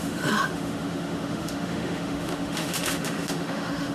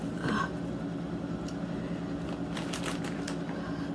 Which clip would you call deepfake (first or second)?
first